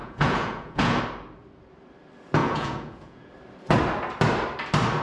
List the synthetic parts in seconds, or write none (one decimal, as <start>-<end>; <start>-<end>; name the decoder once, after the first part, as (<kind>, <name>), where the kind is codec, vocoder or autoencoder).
0.0-1.0 (vocoder, Vocos); 2.4-3.3